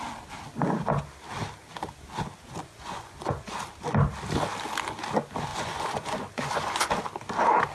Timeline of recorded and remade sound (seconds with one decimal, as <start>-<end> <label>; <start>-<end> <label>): 0.0-2.6 recorded; 2.6-3.6 remade; 3.6-5.5 recorded; 5.5-6.9 remade; 6.9-7.7 recorded